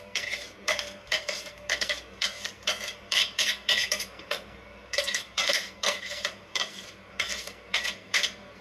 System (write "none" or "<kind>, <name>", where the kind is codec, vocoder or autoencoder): codec, SNAC